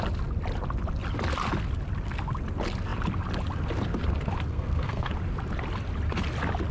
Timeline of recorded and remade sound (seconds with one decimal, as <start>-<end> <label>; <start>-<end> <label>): 0.0-4.5 recorded; 4.5-5.1 remade; 5.1-6.7 recorded